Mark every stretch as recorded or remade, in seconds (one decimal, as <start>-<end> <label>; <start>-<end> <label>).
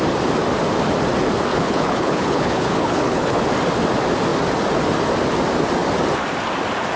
0.0-1.5 recorded; 1.5-3.4 remade; 3.4-7.0 recorded